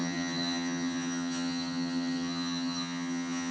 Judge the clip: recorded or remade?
remade